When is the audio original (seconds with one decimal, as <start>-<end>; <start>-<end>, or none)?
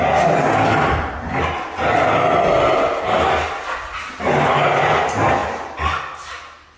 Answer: 0.0-6.8